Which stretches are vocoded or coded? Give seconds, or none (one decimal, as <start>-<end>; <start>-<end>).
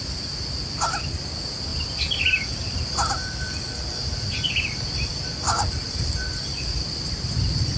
1.7-4.5